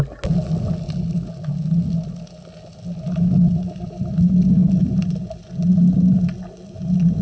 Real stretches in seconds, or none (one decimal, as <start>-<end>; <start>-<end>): 0.0-7.2